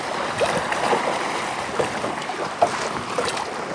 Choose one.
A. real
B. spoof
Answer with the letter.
A